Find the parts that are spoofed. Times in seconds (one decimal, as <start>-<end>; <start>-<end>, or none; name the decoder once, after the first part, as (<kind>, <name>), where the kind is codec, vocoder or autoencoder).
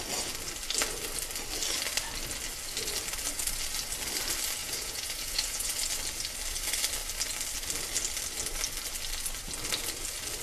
4.6-5.7 (vocoder, Vocos)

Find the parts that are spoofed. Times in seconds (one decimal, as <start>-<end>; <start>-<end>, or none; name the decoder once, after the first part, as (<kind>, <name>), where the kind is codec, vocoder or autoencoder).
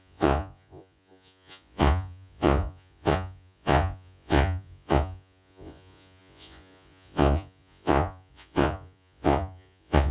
0.0-10.1 (vocoder, Vocos)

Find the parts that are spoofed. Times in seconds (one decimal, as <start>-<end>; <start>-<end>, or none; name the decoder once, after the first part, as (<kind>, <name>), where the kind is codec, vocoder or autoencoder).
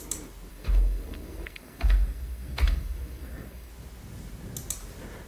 0.5-3.7 (codec, SNAC)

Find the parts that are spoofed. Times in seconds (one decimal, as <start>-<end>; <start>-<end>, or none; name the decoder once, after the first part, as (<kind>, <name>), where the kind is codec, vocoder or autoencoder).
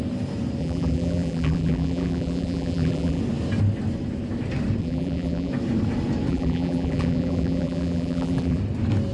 0.6-3.2 (vocoder, BigVGAN v2); 4.8-5.5; 6.3-8.6